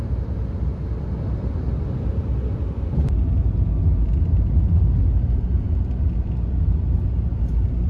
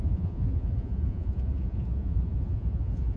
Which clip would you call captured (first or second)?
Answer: first